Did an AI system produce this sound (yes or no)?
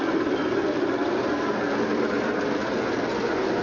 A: no